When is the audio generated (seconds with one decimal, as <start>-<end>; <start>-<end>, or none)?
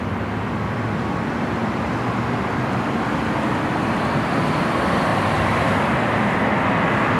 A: 5.1-5.8